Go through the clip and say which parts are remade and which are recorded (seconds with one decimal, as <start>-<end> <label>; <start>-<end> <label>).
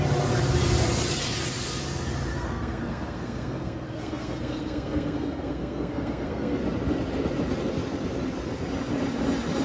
0.0-2.3 recorded; 2.3-6.6 remade; 6.6-9.6 recorded